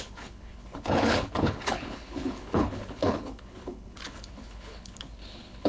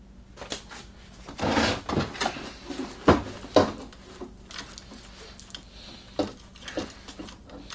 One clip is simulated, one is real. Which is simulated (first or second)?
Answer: first